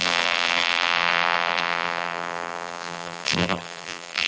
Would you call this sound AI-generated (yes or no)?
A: yes